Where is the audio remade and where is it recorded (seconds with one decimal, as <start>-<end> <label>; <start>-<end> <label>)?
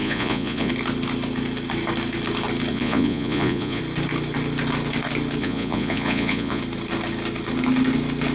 0.0-0.7 remade; 0.7-2.7 recorded; 2.7-3.8 remade; 3.8-5.4 recorded; 5.4-6.6 remade; 6.6-8.3 recorded